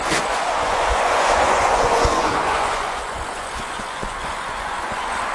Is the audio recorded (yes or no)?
no